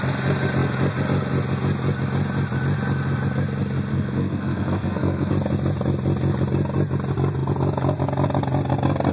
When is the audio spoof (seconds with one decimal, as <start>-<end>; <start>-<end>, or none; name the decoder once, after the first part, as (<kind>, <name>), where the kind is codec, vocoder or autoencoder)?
3.9-5.3 (codec, SNAC)